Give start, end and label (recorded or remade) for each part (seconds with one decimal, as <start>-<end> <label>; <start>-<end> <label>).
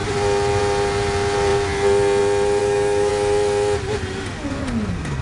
0.0-2.6 recorded; 2.6-3.1 remade; 3.1-5.2 recorded